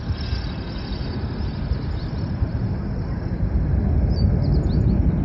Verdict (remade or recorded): recorded